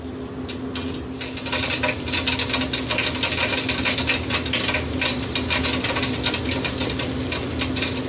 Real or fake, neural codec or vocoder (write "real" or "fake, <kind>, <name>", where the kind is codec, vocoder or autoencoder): real